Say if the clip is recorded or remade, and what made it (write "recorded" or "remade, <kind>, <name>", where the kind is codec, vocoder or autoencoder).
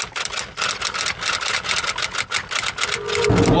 recorded